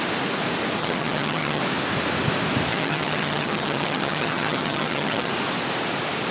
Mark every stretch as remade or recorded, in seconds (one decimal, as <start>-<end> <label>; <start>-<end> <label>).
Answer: 0.0-0.8 recorded; 0.8-1.6 remade; 1.6-2.7 recorded; 2.7-5.3 remade; 5.3-6.3 recorded